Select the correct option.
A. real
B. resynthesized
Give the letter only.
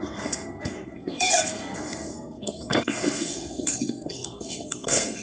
B